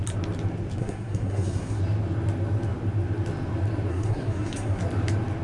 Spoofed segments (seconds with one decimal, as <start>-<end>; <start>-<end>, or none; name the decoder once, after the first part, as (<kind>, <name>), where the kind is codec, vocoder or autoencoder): 0.8-1.8 (codec, SNAC); 3.9-4.8